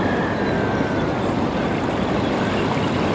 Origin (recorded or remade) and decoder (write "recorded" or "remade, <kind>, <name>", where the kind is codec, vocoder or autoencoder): recorded